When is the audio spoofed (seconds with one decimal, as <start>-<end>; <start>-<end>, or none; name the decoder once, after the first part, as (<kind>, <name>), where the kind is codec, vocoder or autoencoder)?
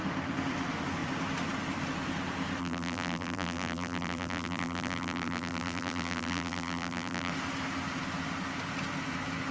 2.6-7.3 (vocoder, BigVGAN v2)